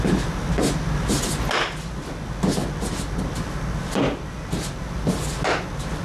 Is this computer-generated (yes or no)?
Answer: no